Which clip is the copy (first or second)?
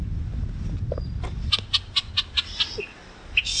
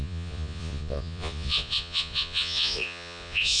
second